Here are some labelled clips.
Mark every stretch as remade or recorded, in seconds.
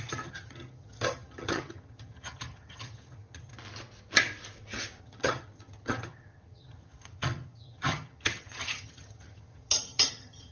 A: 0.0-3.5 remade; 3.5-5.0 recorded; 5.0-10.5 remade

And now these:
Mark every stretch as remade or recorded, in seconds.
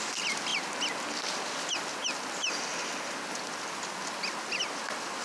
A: 0.0-5.2 recorded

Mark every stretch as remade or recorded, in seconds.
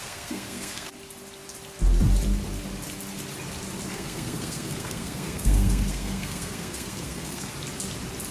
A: 0.0-0.9 remade; 0.9-3.9 recorded; 3.9-7.5 remade; 7.5-8.3 recorded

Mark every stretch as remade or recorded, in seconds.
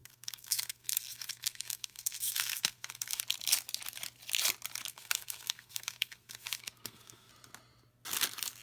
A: 0.0-3.2 remade; 3.2-4.9 recorded; 4.9-7.3 remade; 7.3-8.6 recorded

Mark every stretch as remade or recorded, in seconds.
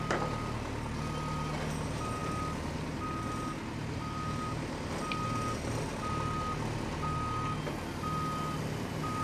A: 0.0-9.2 recorded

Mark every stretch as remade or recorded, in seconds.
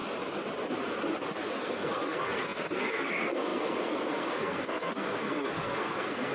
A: 0.0-1.5 recorded; 1.5-6.3 remade